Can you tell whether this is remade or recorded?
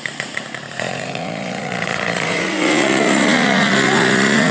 remade